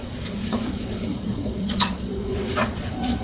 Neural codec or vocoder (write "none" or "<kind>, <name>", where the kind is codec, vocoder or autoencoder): vocoder, Vocos